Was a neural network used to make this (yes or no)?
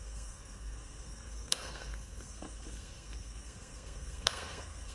yes